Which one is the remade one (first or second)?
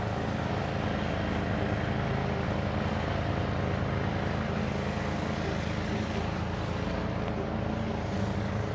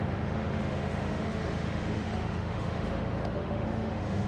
second